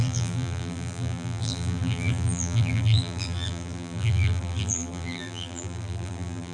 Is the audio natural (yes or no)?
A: no